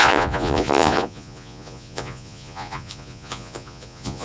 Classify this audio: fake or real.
fake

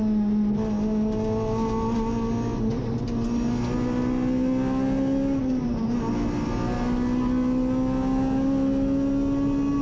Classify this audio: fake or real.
real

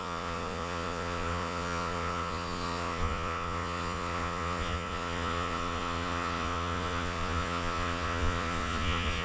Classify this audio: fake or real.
fake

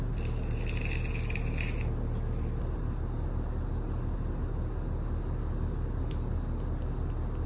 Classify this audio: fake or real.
real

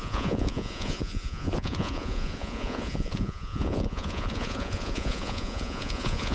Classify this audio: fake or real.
fake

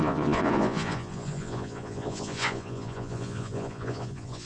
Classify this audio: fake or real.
fake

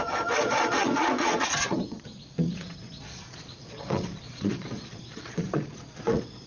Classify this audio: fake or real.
fake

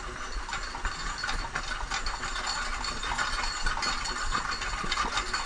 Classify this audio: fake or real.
real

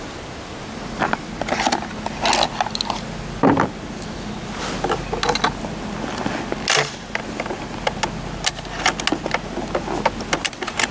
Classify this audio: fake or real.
real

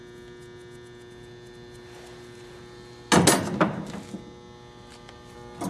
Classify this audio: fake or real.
real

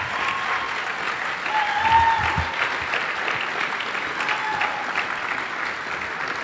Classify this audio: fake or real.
real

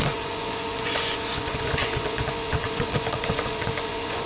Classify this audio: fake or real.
fake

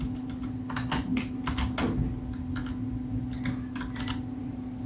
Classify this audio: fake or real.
real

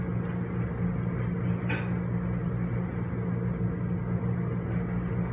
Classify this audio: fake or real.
real